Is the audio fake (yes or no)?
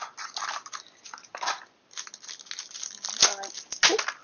no